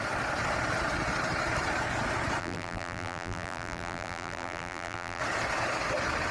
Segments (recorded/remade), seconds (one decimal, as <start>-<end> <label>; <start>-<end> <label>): 0.0-2.4 recorded; 2.4-5.2 remade; 5.2-6.3 recorded